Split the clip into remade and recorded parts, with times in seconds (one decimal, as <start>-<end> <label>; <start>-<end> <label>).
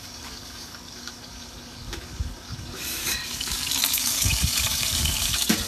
0.0-5.7 remade